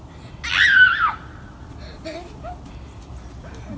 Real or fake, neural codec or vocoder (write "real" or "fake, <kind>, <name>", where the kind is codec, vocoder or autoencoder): real